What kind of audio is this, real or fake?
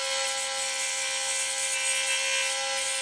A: real